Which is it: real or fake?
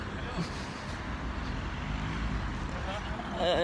real